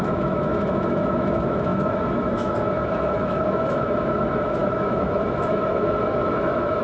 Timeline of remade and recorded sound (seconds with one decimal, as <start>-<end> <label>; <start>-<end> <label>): 0.0-6.8 remade

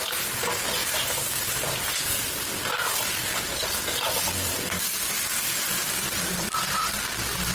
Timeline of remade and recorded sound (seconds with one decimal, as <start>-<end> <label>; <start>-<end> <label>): 0.0-7.5 recorded

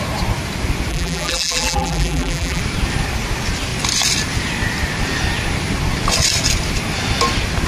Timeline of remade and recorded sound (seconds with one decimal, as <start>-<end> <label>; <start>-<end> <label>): 0.0-0.9 recorded; 0.9-2.6 remade; 2.6-7.7 recorded

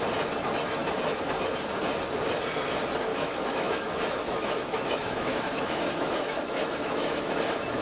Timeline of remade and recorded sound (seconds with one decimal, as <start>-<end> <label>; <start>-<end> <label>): 0.0-3.1 recorded; 3.1-7.8 remade

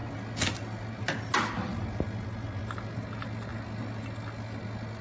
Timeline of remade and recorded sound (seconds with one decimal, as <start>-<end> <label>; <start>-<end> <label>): 0.0-5.0 recorded

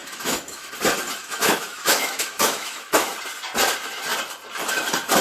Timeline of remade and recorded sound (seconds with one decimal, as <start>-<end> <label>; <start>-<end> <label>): 0.0-0.7 remade; 0.7-1.2 recorded; 1.2-3.1 remade; 3.1-5.2 recorded